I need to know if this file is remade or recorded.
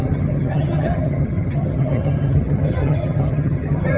remade